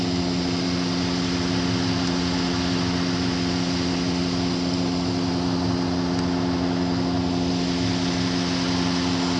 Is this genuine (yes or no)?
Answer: yes